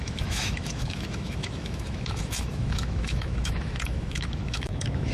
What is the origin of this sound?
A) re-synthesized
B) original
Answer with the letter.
A